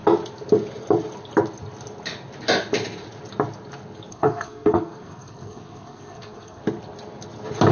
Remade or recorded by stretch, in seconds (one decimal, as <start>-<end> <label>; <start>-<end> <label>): 0.0-4.1 recorded; 4.1-6.6 remade; 6.6-7.7 recorded